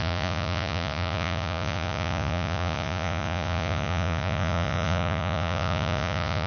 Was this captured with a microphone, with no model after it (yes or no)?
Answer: no